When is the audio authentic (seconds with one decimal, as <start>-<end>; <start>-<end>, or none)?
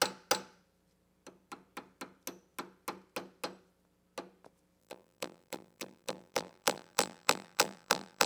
0.0-4.8